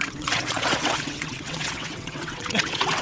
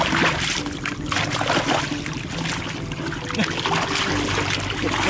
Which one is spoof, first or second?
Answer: first